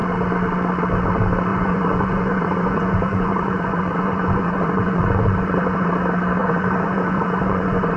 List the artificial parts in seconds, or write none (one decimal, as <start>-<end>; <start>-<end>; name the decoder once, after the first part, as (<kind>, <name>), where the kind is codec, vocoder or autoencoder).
1.5-5.9 (vocoder, Vocos); 6.4-8.0